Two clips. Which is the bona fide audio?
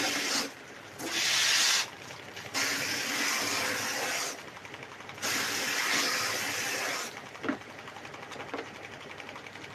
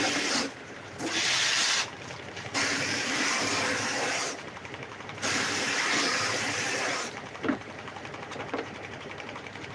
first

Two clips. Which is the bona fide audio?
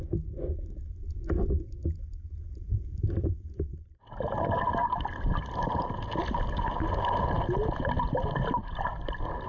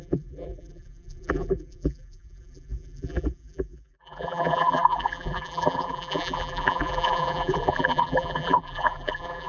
first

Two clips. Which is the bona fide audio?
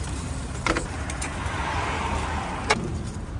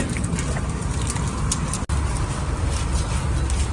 second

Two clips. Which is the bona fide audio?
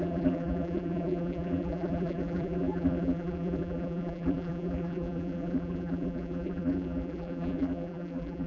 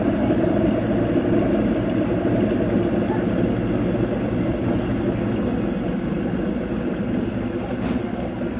second